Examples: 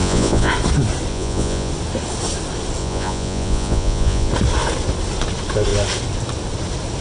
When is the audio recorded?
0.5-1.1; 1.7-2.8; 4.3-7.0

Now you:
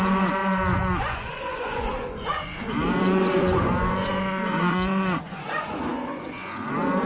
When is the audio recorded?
none